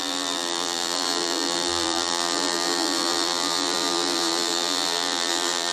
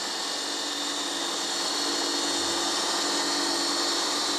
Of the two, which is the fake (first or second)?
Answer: first